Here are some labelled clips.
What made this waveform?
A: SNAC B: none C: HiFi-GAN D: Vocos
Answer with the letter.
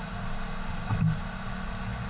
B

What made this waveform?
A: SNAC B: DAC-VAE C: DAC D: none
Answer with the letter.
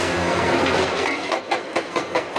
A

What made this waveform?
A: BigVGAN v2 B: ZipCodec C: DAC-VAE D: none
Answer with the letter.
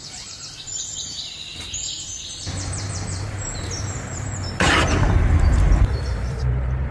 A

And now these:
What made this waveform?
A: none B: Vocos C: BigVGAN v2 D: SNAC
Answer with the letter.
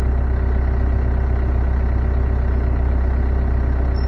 A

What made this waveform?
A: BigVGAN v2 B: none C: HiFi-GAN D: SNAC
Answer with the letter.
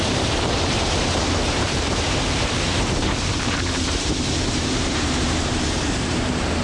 A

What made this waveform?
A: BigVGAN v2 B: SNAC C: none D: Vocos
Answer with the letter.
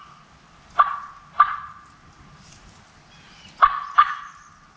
C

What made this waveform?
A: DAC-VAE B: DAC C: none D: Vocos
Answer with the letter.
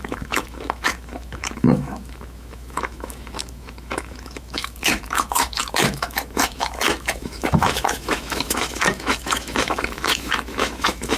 A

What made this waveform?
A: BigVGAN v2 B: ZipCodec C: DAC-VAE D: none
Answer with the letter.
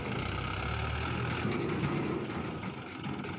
D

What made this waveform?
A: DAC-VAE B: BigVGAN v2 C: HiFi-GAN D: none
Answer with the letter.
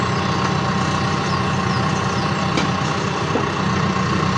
D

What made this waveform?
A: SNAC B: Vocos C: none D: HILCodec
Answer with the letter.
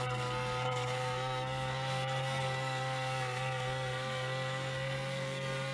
A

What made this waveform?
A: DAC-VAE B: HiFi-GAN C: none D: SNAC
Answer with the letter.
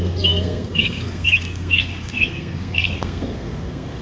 D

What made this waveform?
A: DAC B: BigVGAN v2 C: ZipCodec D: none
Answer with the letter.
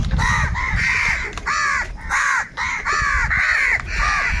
B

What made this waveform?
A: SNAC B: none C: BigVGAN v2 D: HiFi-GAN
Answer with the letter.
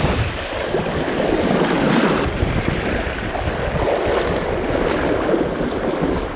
B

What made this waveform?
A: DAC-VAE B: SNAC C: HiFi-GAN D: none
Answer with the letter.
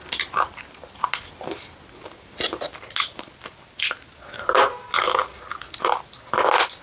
D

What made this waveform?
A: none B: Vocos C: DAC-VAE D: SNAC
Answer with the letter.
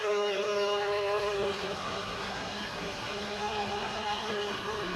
D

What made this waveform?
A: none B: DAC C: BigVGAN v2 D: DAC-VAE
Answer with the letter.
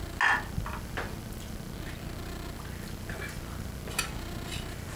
A